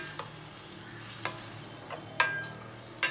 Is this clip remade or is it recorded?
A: recorded